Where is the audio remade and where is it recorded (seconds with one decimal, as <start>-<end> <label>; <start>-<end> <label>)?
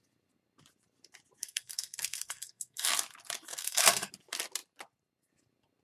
0.0-1.4 recorded; 1.4-2.9 remade; 2.9-3.5 recorded; 3.5-4.1 remade; 4.1-5.8 recorded